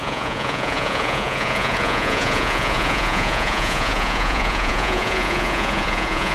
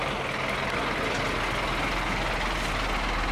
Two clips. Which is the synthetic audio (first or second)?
first